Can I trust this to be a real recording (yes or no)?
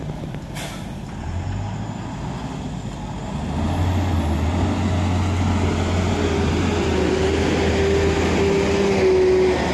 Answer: yes